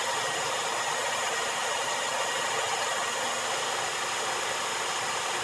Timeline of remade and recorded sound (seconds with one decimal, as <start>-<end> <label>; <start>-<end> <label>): 0.0-5.4 recorded